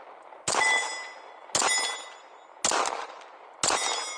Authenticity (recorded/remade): recorded